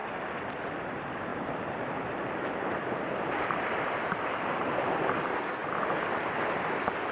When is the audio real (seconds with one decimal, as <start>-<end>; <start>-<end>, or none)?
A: 0.0-1.3; 5.0-7.1